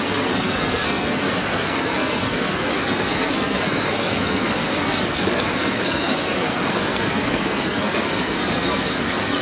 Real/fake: fake